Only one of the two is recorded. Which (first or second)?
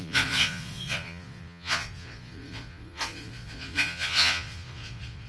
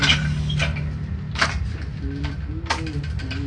second